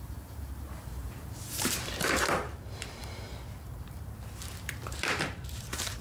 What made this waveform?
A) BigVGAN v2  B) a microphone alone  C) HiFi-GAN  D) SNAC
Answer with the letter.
A